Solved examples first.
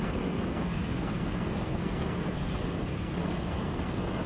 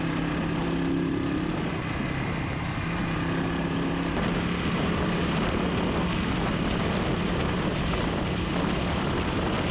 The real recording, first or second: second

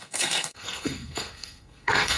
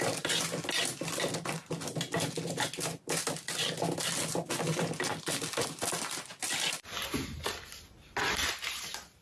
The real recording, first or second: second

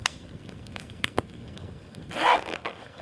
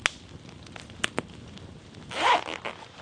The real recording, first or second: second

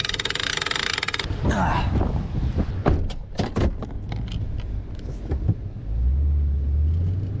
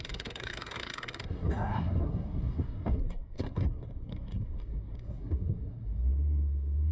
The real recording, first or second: first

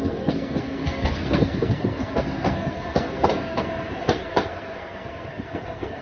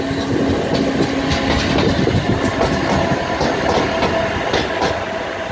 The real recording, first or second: second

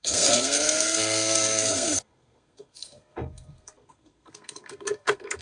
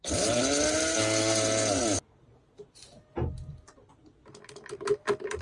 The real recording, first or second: second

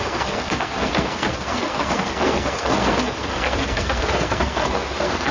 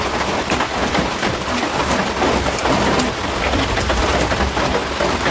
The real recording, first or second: second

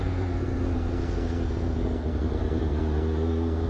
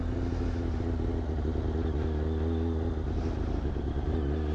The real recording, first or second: second